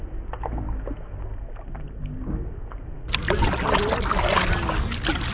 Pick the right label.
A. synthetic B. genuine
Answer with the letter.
B